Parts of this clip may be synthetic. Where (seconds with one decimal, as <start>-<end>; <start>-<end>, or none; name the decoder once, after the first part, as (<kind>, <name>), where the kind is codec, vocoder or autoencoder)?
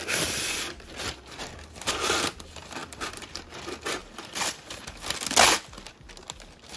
2.8-3.4 (vocoder, BigVGAN v2)